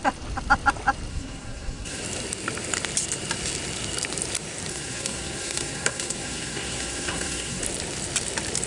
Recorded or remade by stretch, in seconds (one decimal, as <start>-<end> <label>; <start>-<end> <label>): 0.0-1.1 recorded; 1.1-2.0 remade; 2.0-4.7 recorded; 4.7-7.6 remade; 7.6-8.7 recorded